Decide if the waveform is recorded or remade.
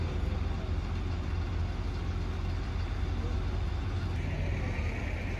recorded